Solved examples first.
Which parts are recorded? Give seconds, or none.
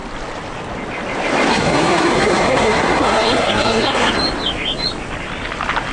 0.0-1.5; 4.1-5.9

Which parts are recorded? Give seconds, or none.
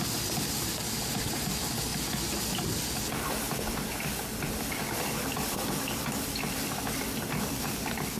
0.0-8.2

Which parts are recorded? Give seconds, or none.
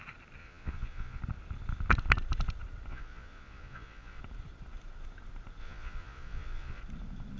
0.0-0.4; 1.2-2.9; 4.2-5.6; 6.8-7.4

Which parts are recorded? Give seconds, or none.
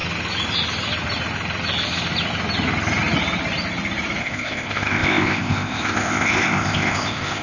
0.0-4.2